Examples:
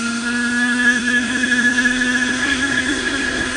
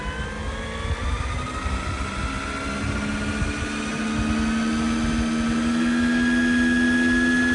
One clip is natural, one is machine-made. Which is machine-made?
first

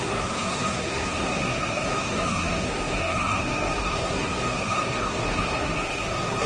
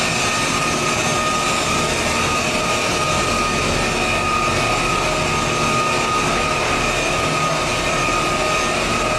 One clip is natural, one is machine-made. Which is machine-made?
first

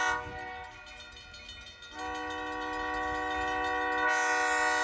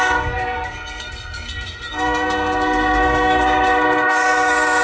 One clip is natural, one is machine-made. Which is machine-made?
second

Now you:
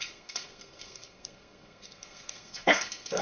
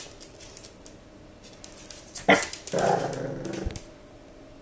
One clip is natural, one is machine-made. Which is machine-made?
first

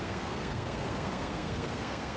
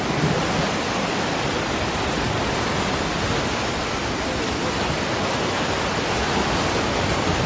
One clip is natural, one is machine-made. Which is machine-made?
first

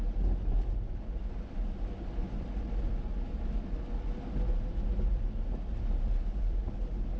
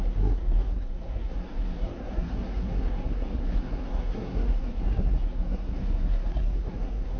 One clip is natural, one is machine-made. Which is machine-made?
second